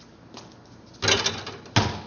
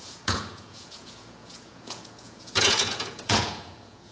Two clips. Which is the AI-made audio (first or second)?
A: second